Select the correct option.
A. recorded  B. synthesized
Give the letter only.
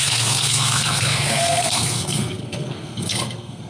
B